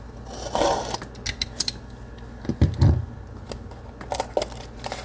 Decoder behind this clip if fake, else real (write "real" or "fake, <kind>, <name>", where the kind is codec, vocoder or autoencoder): real